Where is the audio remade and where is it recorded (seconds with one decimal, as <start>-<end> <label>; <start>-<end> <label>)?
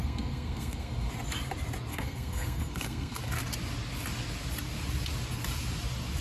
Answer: 0.0-1.1 remade; 1.1-1.9 recorded; 1.9-3.2 remade; 3.2-6.2 recorded